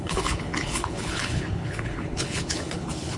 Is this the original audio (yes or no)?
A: no